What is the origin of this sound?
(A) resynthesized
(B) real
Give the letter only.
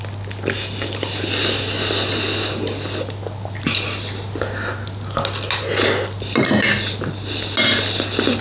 B